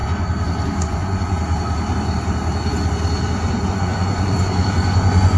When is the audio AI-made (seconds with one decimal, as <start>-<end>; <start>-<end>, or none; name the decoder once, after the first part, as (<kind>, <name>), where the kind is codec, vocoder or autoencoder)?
0.8-1.4 (vocoder, Vocos); 3.7-5.4